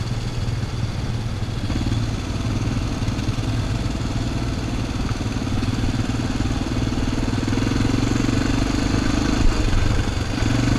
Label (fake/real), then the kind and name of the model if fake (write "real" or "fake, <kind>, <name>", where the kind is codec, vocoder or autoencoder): real